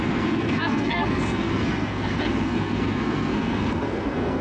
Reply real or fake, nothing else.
fake